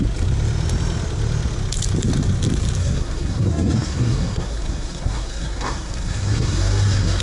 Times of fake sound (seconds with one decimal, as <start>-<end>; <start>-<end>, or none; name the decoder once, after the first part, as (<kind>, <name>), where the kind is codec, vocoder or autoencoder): 2.8-7.2 (codec, SNAC)